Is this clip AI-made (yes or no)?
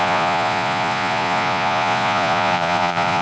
yes